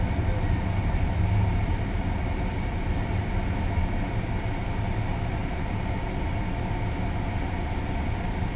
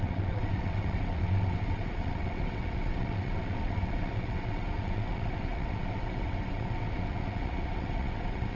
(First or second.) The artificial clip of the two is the second